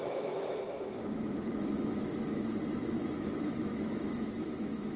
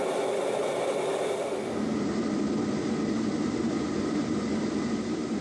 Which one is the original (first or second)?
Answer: second